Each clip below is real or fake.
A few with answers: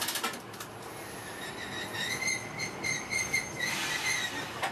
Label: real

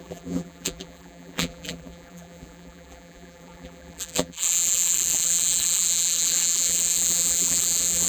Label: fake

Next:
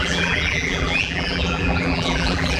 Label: fake